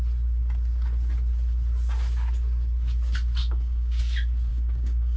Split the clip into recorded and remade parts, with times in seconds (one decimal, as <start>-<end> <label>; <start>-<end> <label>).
0.0-3.4 recorded; 3.4-4.0 remade; 4.0-4.5 recorded; 4.5-5.2 remade